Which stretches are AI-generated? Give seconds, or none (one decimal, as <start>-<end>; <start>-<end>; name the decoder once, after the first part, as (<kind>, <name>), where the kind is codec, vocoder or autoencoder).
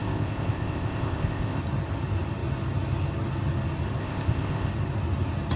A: 0.0-1.6 (codec, ZipCodec); 4.0-4.7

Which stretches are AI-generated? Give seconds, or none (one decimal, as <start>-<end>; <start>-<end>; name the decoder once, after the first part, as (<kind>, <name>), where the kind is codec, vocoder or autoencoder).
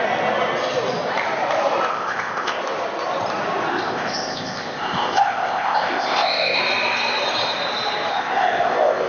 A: 1.9-2.6 (codec, ZipCodec); 3.7-6.6; 8.1-9.1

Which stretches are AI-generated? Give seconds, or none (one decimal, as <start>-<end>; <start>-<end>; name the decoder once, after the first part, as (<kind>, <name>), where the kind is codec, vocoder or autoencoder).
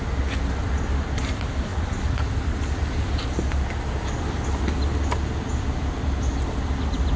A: none